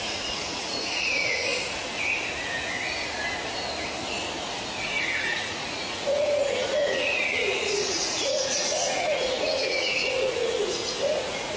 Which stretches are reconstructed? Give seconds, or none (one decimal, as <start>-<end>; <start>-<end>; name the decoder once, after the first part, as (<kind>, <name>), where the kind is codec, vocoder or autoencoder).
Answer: 0.0-1.5 (vocoder, Vocos); 5.0-11.6